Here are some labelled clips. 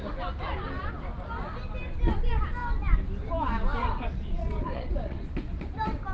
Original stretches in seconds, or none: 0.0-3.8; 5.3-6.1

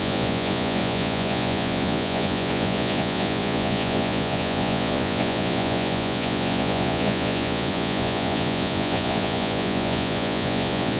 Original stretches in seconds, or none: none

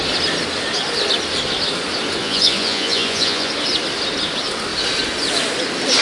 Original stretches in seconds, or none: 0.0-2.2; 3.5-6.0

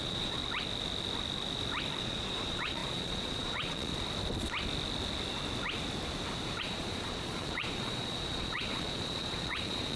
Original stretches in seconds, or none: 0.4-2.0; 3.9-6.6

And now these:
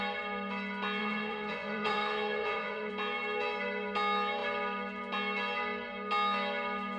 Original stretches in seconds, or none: 0.0-1.0; 2.9-7.0

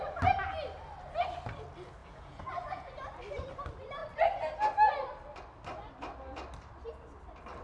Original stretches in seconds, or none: 0.0-2.0; 2.9-7.6

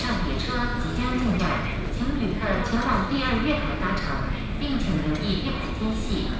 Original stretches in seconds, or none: 0.0-6.4

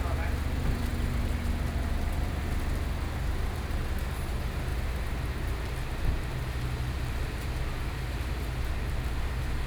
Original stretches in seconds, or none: 0.0-9.7